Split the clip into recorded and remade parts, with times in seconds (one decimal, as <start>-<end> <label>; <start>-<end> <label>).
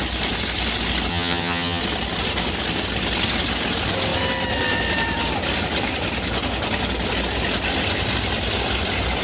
0.0-1.1 recorded; 1.1-1.8 remade; 1.8-9.2 recorded